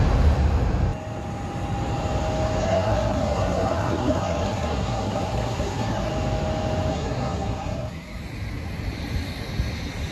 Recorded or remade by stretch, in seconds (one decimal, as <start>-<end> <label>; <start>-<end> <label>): 0.0-2.6 recorded; 2.6-6.1 remade; 6.1-6.9 recorded; 6.9-8.2 remade; 8.2-10.1 recorded